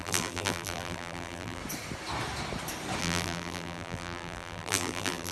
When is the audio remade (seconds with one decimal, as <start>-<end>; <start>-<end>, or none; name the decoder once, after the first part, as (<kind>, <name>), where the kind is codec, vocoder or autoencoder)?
0.0-1.6 (vocoder, BigVGAN v2); 3.0-5.3